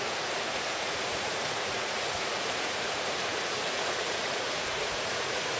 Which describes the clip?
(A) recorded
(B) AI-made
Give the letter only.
B